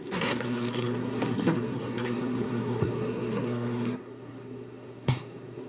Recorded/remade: remade